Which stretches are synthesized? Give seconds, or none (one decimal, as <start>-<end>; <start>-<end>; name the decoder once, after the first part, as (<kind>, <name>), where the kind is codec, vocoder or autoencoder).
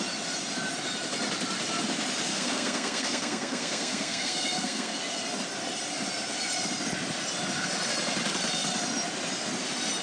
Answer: 2.3-5.0 (codec, SNAC)